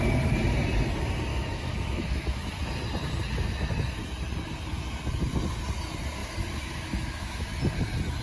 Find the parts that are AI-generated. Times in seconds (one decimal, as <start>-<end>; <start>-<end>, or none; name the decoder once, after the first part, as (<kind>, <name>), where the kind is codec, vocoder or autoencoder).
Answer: 1.3-2.6 (autoencoder, DAC-VAE); 6.2-7.6